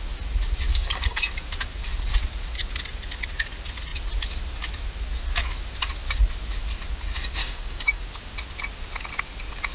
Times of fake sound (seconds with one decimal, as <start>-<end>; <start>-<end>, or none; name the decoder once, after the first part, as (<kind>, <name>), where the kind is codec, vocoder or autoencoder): 0.7-1.3 (codec, DAC); 7.4-8.0